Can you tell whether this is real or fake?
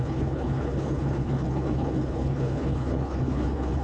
fake